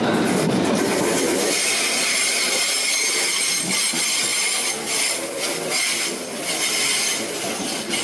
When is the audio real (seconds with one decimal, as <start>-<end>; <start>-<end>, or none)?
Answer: 0.0-8.0